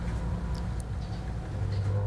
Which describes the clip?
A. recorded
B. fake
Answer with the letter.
A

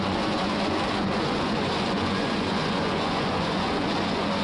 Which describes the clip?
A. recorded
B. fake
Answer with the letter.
B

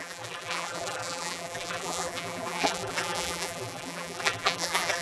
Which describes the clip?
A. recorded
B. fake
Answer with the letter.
B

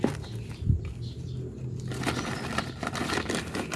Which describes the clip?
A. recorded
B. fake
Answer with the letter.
A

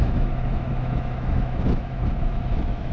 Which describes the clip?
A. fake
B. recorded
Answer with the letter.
A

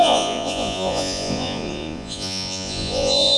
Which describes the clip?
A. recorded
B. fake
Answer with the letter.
B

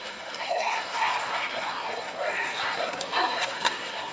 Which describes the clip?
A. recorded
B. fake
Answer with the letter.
B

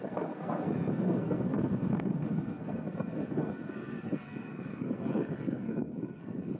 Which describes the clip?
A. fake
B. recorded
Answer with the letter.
A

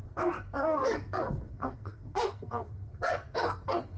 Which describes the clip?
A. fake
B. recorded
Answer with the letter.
A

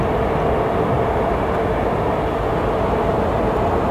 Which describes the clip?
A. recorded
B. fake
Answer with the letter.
A